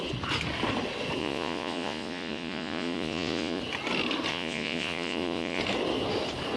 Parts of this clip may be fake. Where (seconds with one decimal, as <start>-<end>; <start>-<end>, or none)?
1.2-3.6; 4.3-5.6

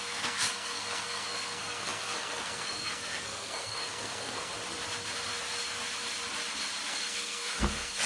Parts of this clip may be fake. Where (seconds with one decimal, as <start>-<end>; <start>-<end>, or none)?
0.0-4.5; 6.9-8.1

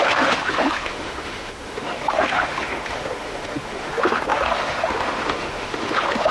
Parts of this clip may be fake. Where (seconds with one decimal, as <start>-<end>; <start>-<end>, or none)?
0.0-6.3

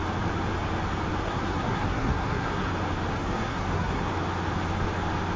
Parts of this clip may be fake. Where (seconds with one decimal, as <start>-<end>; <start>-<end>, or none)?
1.2-2.7; 3.1-4.1

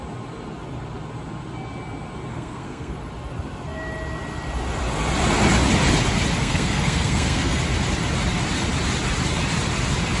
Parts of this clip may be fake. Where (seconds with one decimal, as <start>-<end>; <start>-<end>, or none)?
2.3-2.9; 6.4-7.6

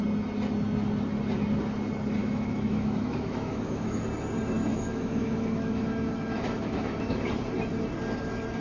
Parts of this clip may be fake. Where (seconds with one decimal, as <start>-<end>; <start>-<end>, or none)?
2.2-4.0; 4.7-7.2

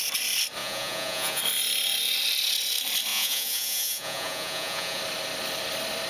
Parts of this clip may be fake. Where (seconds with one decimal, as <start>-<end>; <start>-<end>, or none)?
0.6-1.4; 3.1-5.0